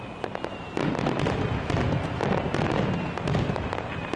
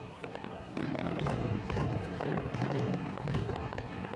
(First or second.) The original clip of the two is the first